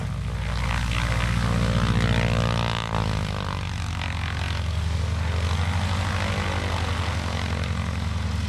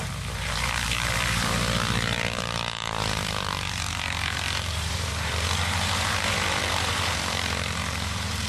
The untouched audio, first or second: first